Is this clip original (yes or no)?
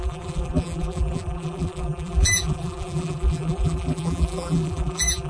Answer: no